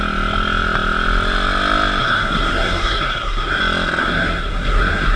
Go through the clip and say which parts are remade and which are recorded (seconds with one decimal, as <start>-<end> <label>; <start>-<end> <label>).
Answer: 0.0-2.0 recorded; 2.0-3.6 remade; 3.6-4.0 recorded; 4.0-5.2 remade